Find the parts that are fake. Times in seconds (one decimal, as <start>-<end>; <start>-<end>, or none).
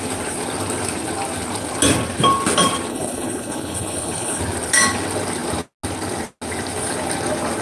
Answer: 2.9-4.4